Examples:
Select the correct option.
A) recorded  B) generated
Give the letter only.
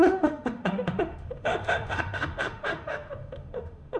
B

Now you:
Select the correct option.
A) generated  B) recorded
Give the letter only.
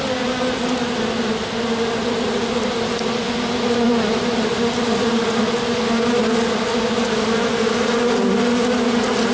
B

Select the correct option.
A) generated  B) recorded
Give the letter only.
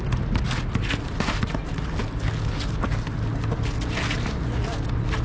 B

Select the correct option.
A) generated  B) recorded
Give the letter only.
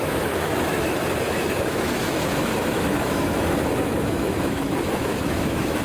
A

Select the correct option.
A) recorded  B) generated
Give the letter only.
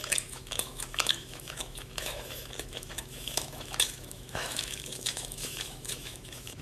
B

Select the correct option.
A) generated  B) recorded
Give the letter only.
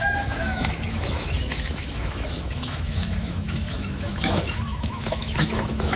A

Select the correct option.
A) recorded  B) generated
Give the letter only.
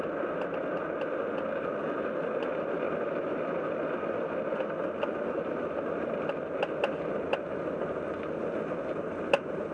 A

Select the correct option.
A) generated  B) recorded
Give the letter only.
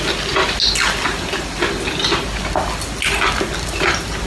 B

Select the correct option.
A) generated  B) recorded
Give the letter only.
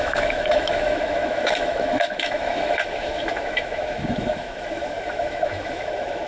A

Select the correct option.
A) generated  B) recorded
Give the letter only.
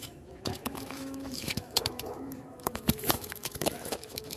A